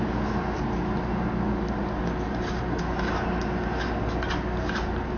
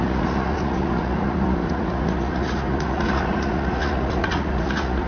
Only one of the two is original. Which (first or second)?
first